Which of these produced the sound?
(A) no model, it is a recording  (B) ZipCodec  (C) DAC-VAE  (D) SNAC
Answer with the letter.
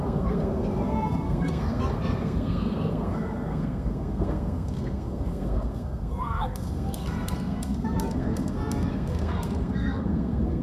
D